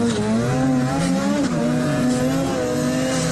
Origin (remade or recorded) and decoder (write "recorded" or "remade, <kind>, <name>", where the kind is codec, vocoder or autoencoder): recorded